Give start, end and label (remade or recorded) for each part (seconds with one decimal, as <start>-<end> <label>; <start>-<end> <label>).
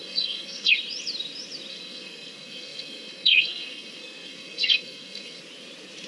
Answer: 0.0-0.7 remade; 0.7-1.7 recorded; 1.7-5.4 remade; 5.4-6.1 recorded